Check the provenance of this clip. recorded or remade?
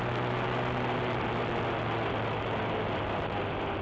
recorded